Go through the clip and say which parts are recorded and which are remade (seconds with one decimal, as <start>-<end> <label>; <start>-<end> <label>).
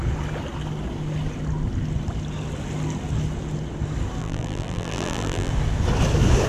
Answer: 0.0-4.2 recorded; 4.2-5.5 remade; 5.5-6.5 recorded